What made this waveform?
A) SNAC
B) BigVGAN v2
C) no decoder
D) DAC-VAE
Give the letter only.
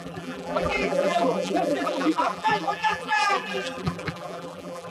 B